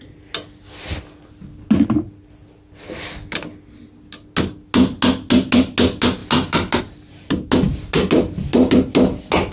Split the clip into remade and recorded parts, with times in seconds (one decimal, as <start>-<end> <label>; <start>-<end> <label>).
0.0-9.5 recorded